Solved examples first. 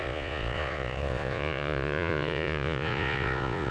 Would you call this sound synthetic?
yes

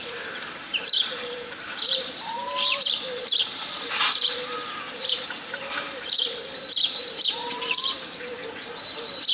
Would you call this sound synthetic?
yes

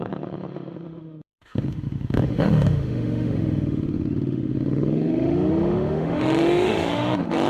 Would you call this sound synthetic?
yes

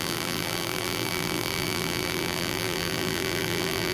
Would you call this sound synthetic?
yes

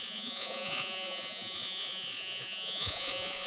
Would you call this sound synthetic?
yes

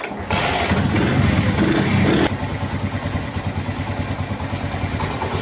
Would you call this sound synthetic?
no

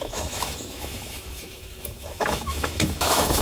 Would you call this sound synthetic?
yes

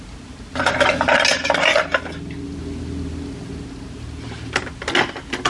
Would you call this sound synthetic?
no